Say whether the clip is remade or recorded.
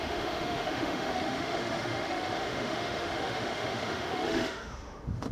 remade